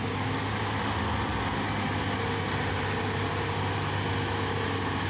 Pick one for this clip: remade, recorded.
recorded